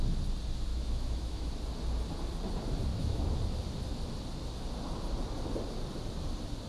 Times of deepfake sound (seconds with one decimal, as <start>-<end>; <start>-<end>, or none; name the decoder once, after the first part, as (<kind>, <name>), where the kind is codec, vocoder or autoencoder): 0.7-1.5 (autoencoder, DAC-VAE); 2.9-3.4